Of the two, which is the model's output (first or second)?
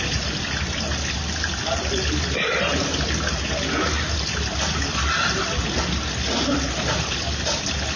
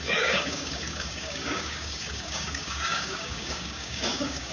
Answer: second